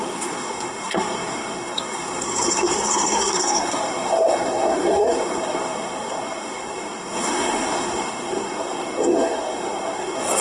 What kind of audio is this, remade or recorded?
remade